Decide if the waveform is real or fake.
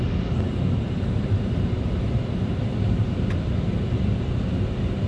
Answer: fake